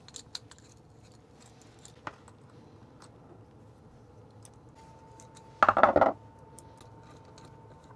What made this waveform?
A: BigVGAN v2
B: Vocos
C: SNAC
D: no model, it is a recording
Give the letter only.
D